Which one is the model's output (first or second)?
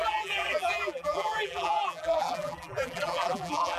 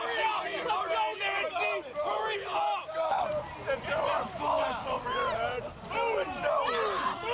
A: first